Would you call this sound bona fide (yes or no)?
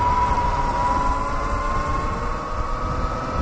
yes